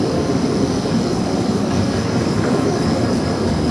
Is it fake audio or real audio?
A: fake